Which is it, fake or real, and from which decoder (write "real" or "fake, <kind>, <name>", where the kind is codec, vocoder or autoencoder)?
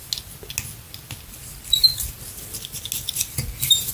real